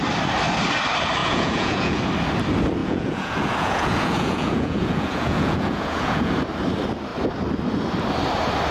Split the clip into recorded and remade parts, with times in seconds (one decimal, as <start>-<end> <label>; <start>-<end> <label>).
0.0-1.2 recorded; 1.2-2.0 remade; 2.0-2.8 recorded; 2.8-6.3 remade; 6.3-8.7 recorded